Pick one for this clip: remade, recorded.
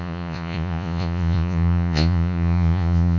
remade